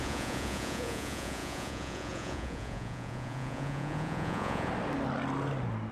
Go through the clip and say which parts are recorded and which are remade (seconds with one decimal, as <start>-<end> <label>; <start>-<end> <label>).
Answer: 0.0-4.7 remade; 4.7-5.9 recorded